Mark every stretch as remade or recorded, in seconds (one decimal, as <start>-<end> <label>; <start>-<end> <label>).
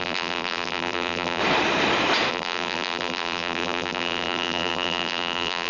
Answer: 0.0-1.4 remade; 1.4-2.3 recorded; 2.3-5.7 remade